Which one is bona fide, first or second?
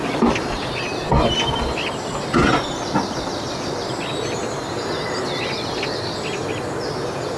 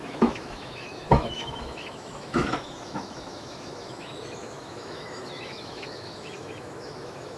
first